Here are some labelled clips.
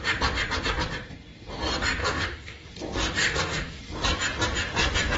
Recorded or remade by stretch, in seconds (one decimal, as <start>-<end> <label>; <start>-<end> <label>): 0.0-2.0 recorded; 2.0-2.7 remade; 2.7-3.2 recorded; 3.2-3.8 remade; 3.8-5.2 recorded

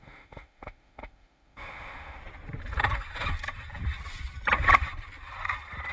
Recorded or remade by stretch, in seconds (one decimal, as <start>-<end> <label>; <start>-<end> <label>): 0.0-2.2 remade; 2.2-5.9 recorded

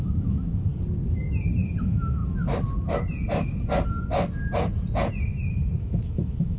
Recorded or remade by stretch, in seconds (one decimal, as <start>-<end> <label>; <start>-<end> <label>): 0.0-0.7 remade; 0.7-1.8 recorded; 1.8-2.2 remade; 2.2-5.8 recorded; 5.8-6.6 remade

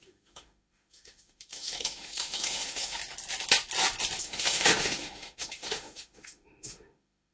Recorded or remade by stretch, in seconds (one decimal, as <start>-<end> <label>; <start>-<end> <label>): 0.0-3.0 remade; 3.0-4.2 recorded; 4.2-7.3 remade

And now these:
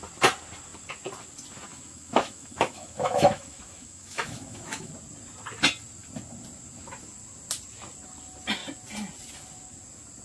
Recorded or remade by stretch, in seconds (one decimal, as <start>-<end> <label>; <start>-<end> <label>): 0.0-1.7 recorded; 1.7-4.9 remade; 4.9-10.2 recorded